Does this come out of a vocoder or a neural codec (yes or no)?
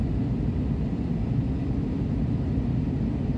no